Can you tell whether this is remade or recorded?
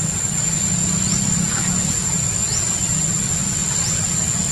recorded